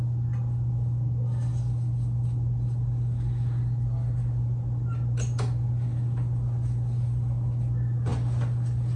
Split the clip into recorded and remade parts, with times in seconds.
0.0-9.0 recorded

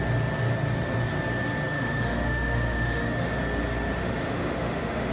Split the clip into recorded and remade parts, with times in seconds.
0.0-1.7 recorded; 1.7-3.4 remade; 3.4-4.0 recorded; 4.0-5.1 remade